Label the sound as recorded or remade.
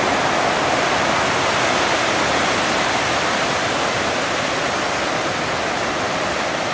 recorded